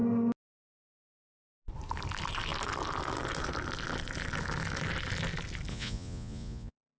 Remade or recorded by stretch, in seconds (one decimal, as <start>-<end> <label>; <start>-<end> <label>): 0.0-5.7 recorded; 5.7-7.0 remade